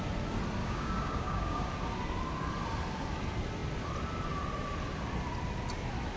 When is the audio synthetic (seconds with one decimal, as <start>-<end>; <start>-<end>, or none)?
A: 0.6-1.7